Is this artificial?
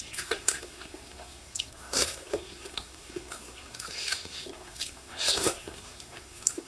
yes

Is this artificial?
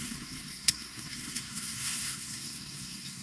yes